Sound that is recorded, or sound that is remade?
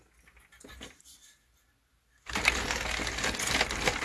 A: recorded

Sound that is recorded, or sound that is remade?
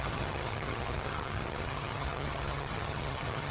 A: remade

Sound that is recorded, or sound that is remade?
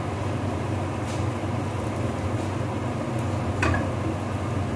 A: recorded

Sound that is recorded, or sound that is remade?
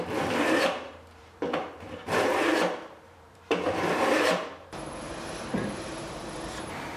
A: remade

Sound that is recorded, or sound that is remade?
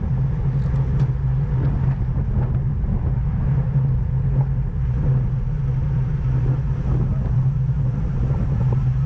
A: recorded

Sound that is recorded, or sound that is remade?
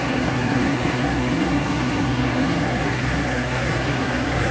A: remade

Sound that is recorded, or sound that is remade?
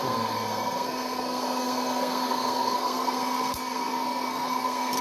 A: remade